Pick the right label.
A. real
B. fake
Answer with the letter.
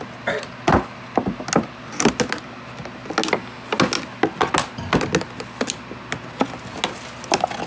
A